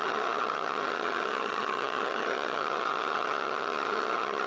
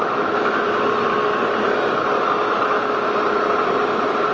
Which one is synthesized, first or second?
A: first